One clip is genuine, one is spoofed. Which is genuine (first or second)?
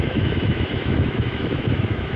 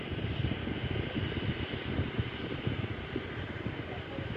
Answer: second